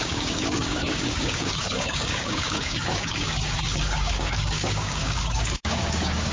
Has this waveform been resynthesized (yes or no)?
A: yes